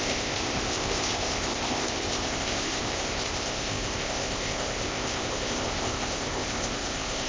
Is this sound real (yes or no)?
no